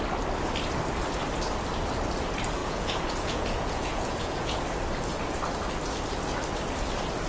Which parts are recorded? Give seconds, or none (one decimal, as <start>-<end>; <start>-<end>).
0.0-2.6; 4.6-7.3